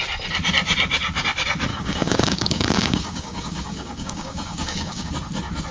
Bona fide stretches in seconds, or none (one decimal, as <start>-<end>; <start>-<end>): 0.0-1.7; 5.1-5.7